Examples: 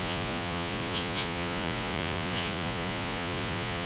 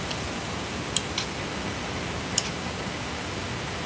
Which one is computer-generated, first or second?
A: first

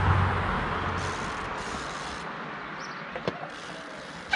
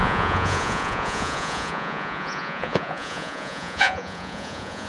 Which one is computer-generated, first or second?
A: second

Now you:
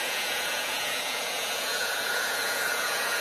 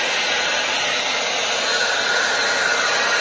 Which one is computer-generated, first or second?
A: first